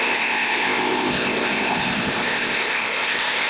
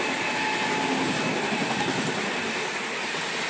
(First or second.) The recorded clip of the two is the second